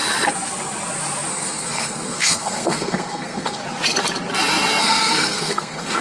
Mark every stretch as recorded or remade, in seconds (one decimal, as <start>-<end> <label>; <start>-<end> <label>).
0.0-1.3 recorded; 1.3-3.6 remade; 3.6-4.8 recorded; 4.8-6.0 remade